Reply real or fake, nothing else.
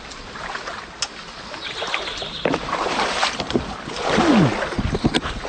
real